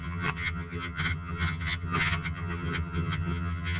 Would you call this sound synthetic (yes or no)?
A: yes